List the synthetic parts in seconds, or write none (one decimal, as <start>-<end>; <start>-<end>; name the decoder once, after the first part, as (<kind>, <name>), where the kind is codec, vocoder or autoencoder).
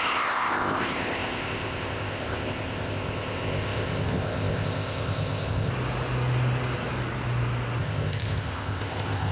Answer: 0.0-5.7 (codec, ZipCodec); 7.8-9.3